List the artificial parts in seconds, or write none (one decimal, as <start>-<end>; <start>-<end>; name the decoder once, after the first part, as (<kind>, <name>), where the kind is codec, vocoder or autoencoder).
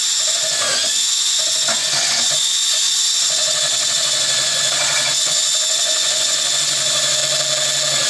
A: 0.0-7.2 (vocoder, Vocos)